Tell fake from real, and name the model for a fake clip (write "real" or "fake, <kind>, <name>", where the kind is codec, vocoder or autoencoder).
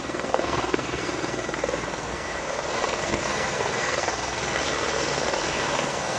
fake, codec, SNAC